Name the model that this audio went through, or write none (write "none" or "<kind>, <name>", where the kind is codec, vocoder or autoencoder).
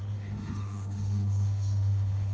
autoencoder, DAC-VAE